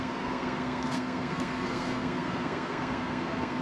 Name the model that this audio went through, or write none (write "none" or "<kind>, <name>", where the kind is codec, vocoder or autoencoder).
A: codec, SNAC